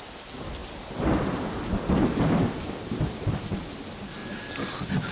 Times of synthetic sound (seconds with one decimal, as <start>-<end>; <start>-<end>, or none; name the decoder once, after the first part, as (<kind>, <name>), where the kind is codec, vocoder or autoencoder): 0.6-3.7 (vocoder, BigVGAN v2)